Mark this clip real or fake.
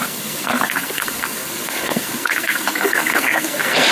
fake